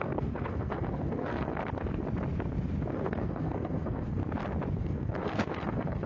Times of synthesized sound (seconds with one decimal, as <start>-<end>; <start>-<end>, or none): 0.0-1.6; 2.9-4.2; 4.8-6.1